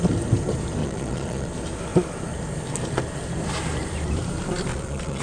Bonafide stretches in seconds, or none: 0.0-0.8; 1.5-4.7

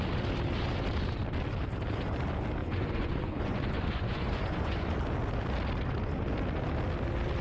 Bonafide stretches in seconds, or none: 0.0-2.6; 4.9-7.4

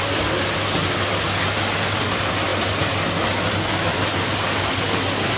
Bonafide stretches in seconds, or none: 0.0-5.4

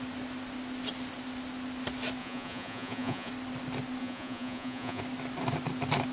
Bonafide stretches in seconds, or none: 0.0-2.2; 3.3-4.0; 5.0-6.1

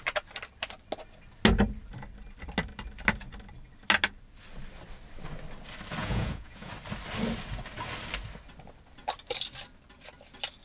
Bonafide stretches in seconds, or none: 0.0-6.0; 6.7-10.6